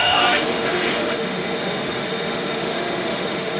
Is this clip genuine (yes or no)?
no